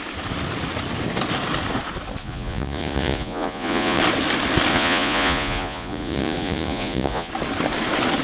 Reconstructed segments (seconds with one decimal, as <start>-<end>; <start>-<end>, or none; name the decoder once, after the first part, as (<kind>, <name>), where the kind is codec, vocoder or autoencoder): 2.2-4.0 (vocoder, Vocos); 4.7-7.3